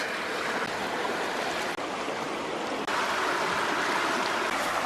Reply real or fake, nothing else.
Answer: real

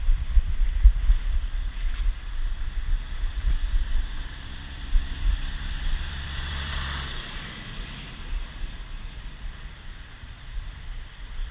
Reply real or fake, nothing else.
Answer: fake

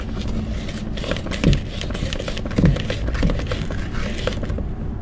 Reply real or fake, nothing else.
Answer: real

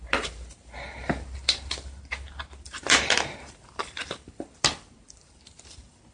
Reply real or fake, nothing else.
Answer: fake